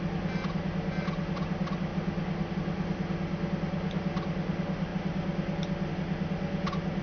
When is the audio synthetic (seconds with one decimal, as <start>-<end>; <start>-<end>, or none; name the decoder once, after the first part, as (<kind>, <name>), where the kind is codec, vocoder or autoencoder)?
none